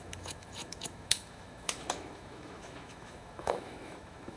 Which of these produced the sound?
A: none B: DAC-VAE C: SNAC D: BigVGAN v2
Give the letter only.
B